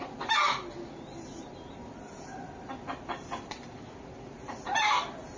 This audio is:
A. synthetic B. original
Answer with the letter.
B